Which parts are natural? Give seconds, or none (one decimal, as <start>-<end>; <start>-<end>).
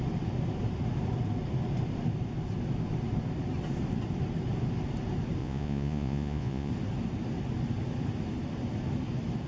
0.0-5.4; 6.7-9.5